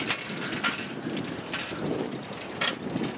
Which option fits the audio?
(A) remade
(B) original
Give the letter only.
B